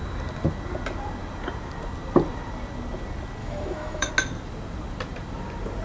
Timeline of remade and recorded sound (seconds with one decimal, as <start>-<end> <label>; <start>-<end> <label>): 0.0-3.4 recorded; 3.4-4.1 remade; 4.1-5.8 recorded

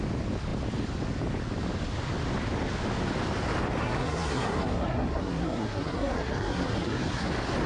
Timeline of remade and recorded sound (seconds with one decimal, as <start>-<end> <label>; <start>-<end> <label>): 0.0-3.8 recorded; 3.8-7.3 remade; 7.3-7.7 recorded

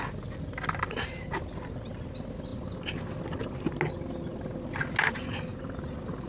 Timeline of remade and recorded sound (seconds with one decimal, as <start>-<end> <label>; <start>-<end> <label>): 0.0-6.3 recorded